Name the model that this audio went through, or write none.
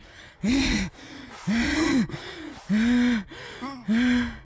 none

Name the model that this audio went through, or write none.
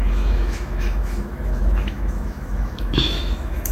autoencoder, DAC-VAE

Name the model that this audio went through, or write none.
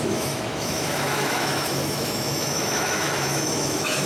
autoencoder, DAC-VAE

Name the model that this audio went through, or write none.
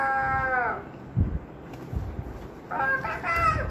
none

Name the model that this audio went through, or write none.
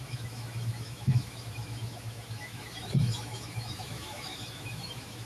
autoencoder, DAC-VAE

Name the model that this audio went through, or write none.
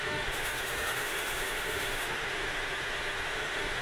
autoencoder, DAC-VAE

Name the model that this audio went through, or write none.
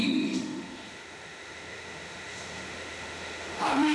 autoencoder, DAC-VAE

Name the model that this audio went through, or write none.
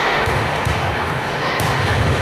autoencoder, DAC-VAE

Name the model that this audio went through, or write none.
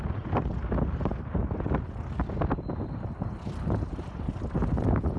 none